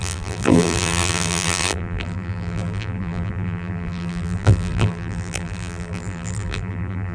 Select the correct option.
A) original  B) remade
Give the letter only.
B